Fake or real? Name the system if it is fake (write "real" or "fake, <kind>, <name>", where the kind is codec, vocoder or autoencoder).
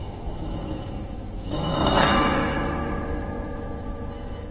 fake, autoencoder, DAC-VAE